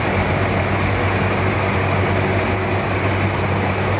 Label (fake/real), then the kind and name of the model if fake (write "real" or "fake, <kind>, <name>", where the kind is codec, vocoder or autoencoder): real